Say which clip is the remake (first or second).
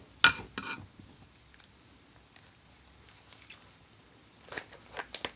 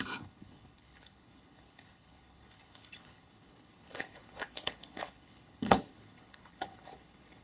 second